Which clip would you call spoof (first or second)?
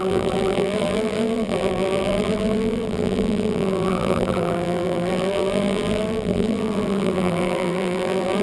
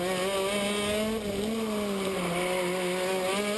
first